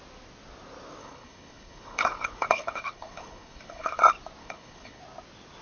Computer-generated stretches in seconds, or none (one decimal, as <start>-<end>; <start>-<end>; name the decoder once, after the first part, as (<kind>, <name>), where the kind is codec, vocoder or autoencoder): 1.0-4.0 (codec, HILCodec); 4.4-5.0